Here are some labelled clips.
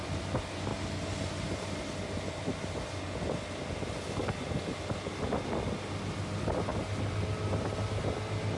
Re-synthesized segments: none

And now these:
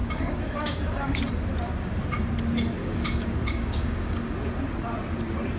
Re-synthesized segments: 0.0-1.2 (codec, DAC); 2.8-4.5

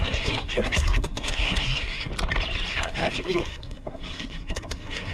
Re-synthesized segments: 0.0-2.1 (codec, SNAC); 2.7-5.1

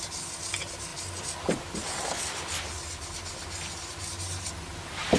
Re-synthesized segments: none